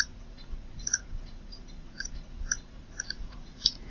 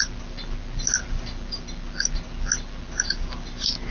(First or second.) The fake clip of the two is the first